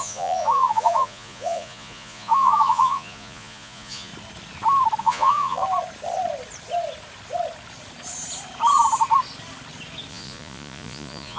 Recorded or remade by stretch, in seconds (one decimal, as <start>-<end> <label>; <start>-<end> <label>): 0.0-4.1 remade; 4.1-5.0 recorded; 5.0-5.6 remade; 5.6-10.1 recorded; 10.1-11.4 remade

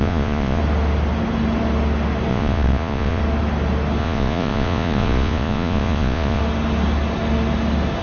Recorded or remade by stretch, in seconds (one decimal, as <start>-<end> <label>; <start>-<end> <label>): 0.0-0.6 remade; 0.6-2.3 recorded; 2.3-3.2 remade; 3.2-4.0 recorded; 4.0-6.4 remade; 6.4-8.0 recorded